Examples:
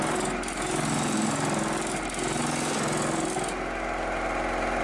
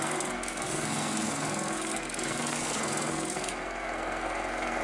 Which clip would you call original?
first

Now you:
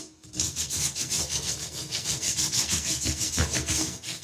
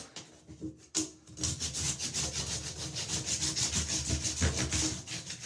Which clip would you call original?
second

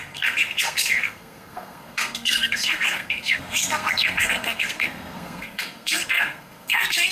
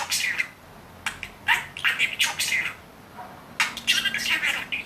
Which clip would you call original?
second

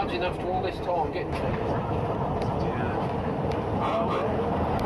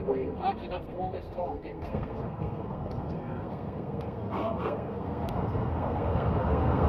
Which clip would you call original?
first